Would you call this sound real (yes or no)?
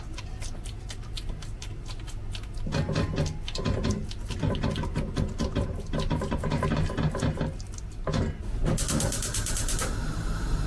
yes